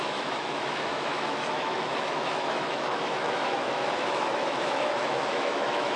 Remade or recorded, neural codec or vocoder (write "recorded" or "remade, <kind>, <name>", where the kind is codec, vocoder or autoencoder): remade, autoencoder, DAC-VAE